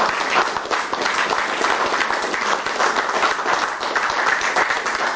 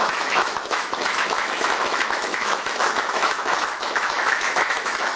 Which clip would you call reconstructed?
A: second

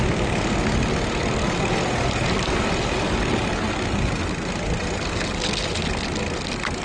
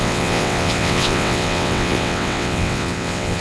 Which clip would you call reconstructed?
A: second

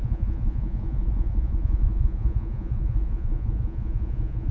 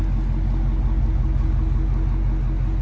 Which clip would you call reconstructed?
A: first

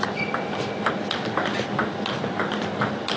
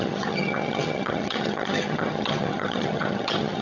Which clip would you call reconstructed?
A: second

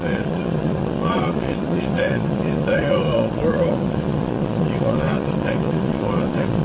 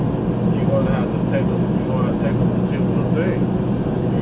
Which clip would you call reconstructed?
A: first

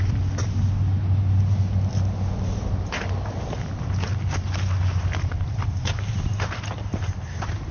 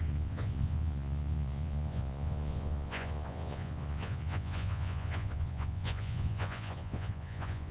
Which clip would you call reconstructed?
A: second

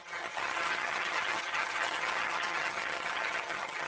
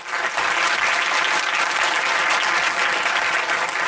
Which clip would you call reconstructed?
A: first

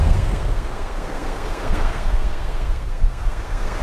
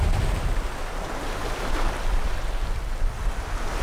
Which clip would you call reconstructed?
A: first